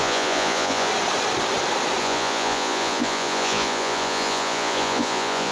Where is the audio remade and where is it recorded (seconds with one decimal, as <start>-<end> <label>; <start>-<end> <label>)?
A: 0.0-0.9 remade; 0.9-2.0 recorded; 2.0-5.5 remade